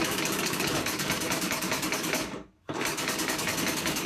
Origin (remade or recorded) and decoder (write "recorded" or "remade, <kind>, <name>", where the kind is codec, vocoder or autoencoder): remade, codec, DAC